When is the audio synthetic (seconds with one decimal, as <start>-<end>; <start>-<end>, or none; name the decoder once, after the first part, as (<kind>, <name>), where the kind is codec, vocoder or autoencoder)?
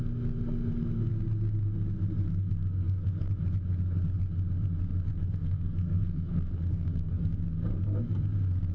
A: 2.3-3.3 (codec, SNAC); 5.1-7.2